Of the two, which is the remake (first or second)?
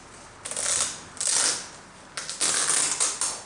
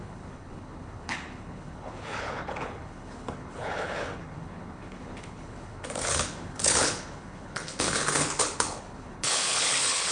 second